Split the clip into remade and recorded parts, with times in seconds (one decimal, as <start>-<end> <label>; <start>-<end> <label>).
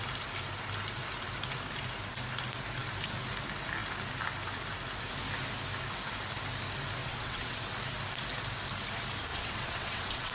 0.0-7.0 recorded; 7.0-7.6 remade; 7.6-9.3 recorded; 9.3-10.3 remade